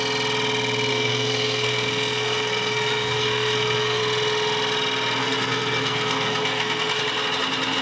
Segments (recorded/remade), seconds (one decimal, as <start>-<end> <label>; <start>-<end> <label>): 0.0-0.9 recorded; 0.9-4.0 remade; 4.0-5.2 recorded; 5.2-7.0 remade; 7.0-7.8 recorded